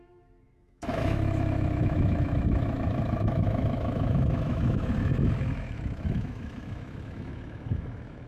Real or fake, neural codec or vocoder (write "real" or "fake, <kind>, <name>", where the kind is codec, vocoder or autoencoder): fake, autoencoder, DAC-VAE